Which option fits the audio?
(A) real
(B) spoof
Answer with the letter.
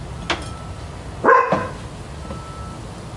A